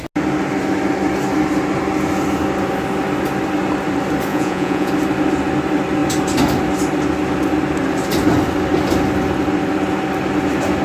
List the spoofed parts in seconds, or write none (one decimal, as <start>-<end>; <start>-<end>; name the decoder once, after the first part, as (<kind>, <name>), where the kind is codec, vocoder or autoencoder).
4.3-4.9 (vocoder, Vocos)